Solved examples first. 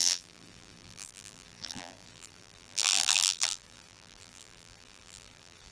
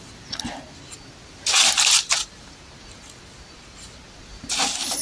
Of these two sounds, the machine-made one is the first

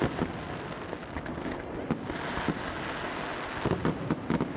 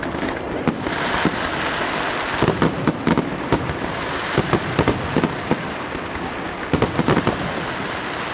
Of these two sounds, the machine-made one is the second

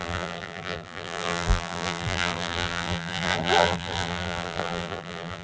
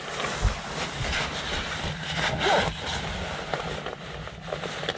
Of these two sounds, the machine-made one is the first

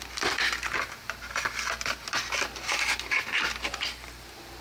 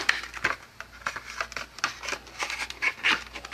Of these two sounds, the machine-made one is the first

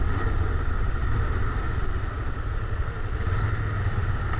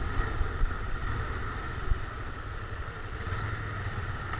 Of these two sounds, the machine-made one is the second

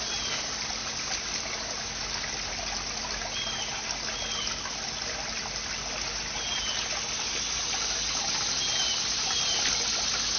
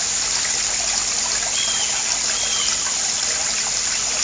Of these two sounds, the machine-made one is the second